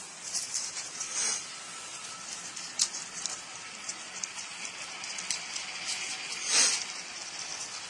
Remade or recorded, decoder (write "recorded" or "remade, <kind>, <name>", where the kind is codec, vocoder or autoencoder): remade, vocoder, BigVGAN v2